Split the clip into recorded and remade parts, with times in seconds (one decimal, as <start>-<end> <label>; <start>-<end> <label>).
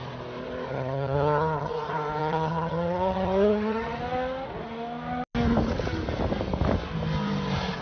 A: 0.0-0.7 recorded; 0.7-1.7 remade; 1.7-2.2 recorded; 2.2-4.0 remade; 4.0-7.8 recorded